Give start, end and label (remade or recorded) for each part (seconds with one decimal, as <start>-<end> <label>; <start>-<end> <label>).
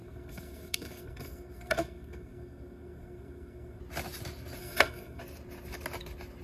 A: 0.0-3.8 remade; 3.8-4.6 recorded; 4.6-5.2 remade; 5.2-6.4 recorded